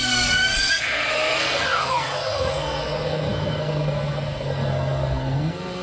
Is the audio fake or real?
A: fake